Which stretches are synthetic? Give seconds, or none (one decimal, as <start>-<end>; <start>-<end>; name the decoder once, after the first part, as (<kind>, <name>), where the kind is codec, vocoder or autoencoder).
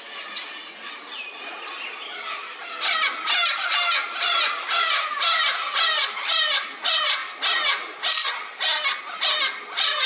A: none